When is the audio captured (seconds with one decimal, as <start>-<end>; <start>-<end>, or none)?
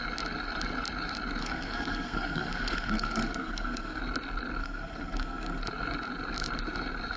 0.0-1.4; 4.0-4.6; 5.6-7.2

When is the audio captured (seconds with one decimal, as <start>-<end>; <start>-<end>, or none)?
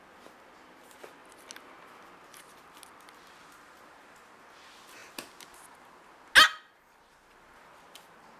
0.0-8.4